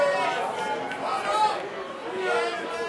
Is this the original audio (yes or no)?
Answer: yes